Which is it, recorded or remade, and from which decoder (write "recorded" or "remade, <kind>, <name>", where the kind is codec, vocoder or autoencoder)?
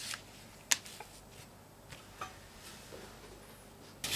recorded